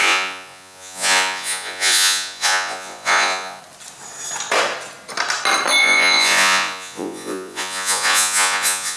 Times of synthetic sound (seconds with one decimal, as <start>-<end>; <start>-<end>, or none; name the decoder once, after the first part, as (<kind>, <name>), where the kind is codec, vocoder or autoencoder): 0.0-3.6 (vocoder, Vocos); 5.8-9.0